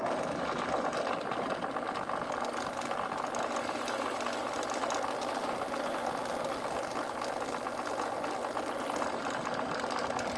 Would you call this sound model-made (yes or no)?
no